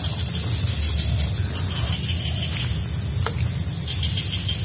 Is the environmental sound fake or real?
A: real